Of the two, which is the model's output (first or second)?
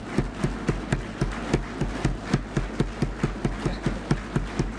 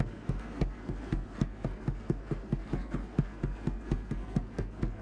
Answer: second